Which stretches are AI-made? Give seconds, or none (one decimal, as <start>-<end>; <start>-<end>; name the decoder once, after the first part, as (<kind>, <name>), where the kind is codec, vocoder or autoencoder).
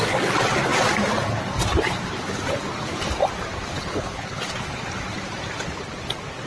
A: 3.8-4.4 (codec, HILCodec)